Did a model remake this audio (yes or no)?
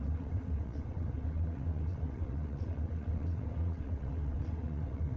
yes